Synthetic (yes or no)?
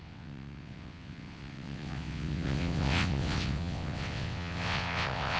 yes